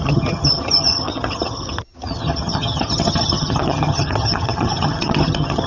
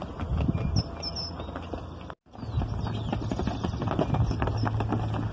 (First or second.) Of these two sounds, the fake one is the first